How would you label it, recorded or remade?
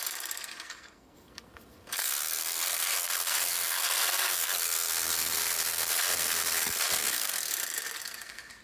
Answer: remade